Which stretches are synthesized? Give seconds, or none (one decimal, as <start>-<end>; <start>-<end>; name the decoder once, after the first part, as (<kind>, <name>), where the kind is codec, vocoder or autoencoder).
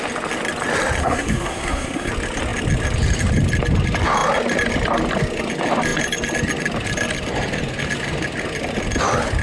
1.0-2.1 (codec, SNAC)